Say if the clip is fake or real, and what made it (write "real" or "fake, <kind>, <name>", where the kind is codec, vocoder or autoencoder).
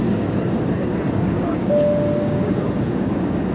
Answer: fake, codec, DAC